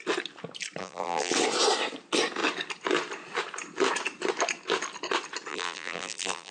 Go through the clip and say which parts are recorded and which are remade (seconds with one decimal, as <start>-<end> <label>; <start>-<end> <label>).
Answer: 0.0-0.8 recorded; 0.8-1.3 remade; 1.3-5.5 recorded; 5.5-6.5 remade